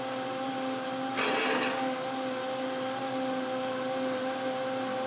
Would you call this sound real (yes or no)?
yes